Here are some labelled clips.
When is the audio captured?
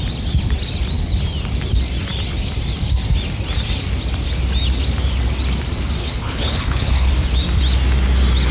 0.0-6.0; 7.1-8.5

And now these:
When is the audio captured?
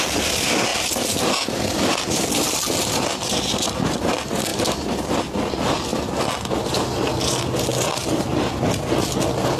0.0-4.5; 5.1-9.6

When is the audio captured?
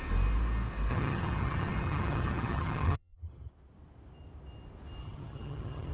0.0-0.9; 3.5-5.0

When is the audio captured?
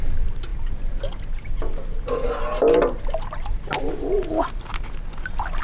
0.0-5.6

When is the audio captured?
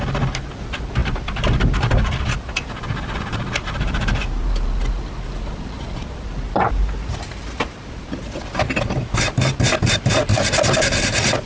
0.0-11.5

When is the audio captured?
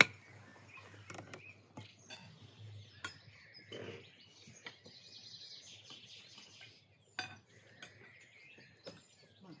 0.0-9.6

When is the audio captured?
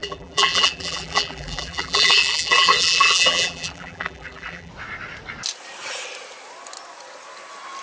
4.7-7.8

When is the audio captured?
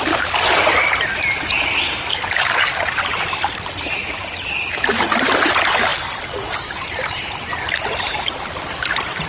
0.0-2.1; 2.8-9.3